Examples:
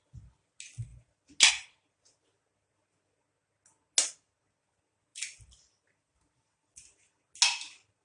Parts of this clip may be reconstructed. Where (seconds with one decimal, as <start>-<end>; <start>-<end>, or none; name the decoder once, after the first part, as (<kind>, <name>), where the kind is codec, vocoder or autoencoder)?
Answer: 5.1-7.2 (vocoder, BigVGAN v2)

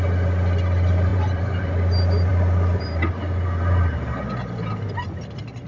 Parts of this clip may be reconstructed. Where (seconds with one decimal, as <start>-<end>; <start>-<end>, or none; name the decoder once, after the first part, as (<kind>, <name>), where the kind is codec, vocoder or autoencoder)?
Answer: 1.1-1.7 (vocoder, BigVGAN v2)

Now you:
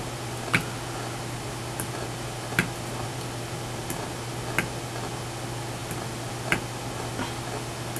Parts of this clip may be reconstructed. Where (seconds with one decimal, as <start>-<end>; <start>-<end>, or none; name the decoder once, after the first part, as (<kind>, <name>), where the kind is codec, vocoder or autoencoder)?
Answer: 5.8-6.5 (vocoder, BigVGAN v2)

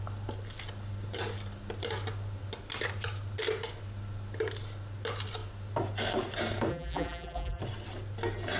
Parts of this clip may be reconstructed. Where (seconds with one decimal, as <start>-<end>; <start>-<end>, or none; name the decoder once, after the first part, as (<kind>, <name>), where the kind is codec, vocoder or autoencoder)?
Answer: 6.7-7.6 (vocoder, BigVGAN v2)